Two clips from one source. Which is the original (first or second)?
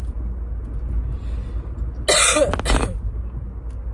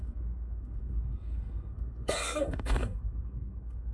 first